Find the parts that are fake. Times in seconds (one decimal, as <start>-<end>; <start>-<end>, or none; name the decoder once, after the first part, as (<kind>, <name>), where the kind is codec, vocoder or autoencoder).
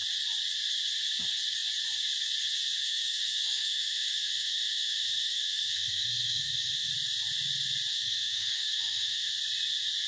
2.8-6.9 (autoencoder, DAC-VAE); 7.9-9.3